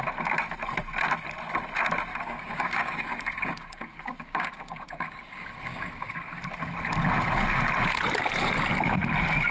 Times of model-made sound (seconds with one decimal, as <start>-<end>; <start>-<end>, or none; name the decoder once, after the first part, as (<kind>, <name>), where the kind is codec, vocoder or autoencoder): 2.1-6.4 (codec, DAC)